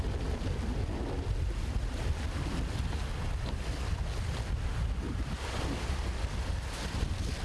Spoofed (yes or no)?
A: no